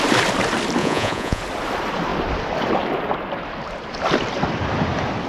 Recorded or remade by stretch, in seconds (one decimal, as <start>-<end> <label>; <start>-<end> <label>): 0.0-0.8 recorded; 0.8-1.4 remade; 1.4-5.3 recorded